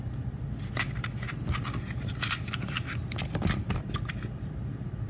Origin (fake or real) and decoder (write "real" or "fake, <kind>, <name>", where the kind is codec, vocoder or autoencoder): real